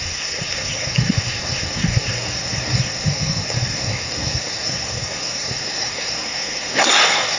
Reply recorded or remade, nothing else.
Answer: remade